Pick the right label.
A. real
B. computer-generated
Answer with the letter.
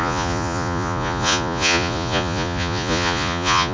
B